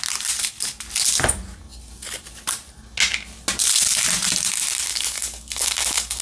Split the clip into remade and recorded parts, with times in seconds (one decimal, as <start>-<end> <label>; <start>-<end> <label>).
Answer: 0.0-4.9 recorded; 4.9-6.2 remade